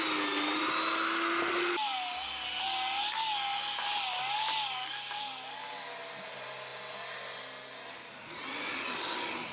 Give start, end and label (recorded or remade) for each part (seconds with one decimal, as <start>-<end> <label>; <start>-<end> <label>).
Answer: 0.0-9.5 recorded